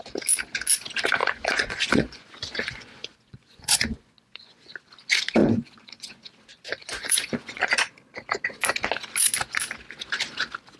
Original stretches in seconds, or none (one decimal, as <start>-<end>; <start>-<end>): 0.0-1.2; 4.7-5.4; 6.3-6.8; 7.7-10.8

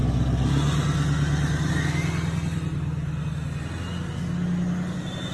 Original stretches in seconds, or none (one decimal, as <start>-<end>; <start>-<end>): 0.0-5.3

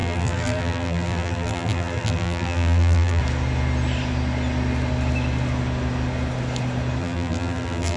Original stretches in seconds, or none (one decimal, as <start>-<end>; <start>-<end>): 3.2-7.0

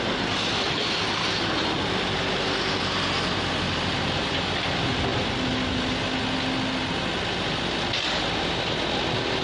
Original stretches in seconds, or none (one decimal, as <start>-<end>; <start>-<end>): 0.0-9.4

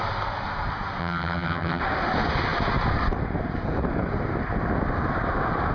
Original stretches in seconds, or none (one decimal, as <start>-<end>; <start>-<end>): 0.0-1.0; 1.8-5.7